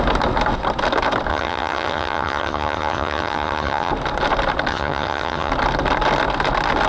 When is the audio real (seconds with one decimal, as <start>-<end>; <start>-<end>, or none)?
0.0-1.3; 3.9-4.7; 5.5-6.9